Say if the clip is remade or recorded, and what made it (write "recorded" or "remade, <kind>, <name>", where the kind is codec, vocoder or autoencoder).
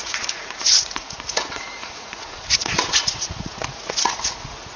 remade, vocoder, Vocos